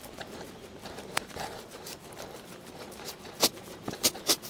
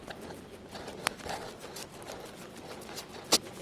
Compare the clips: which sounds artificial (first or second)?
first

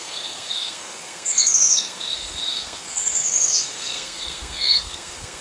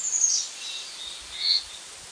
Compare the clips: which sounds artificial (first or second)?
first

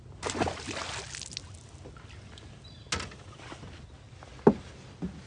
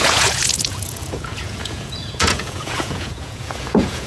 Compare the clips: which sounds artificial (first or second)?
second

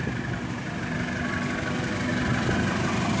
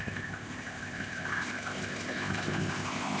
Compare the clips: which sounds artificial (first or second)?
second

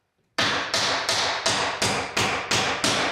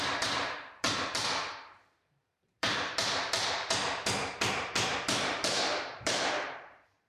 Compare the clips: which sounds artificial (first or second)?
second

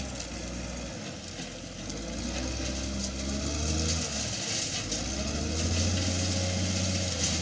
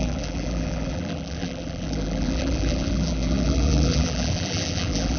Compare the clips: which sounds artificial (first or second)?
second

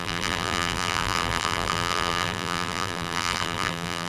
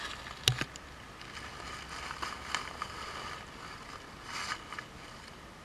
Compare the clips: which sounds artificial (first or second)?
first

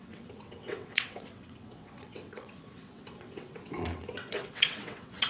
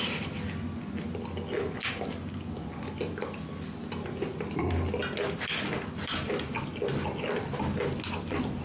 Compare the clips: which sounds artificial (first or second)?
first